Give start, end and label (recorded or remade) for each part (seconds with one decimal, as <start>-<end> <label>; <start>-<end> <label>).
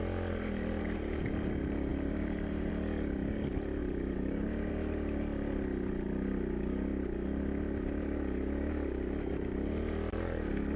0.0-1.9 recorded; 1.9-2.7 remade; 2.7-3.8 recorded; 3.8-4.7 remade; 4.7-10.8 recorded